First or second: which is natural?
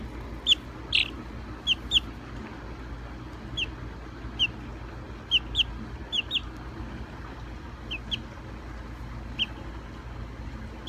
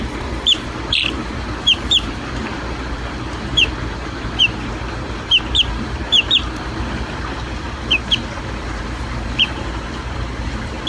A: first